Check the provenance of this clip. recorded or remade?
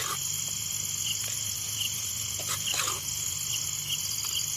recorded